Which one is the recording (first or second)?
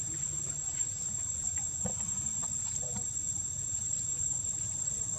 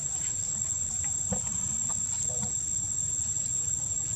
second